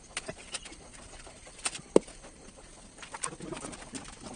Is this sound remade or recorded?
recorded